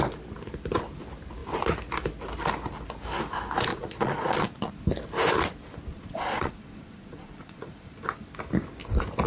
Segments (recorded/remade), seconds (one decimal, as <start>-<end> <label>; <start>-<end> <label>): 0.0-3.7 recorded; 3.7-4.7 remade; 4.7-5.9 recorded; 5.9-8.0 remade; 8.0-9.3 recorded